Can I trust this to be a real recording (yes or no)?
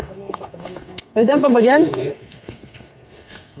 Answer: no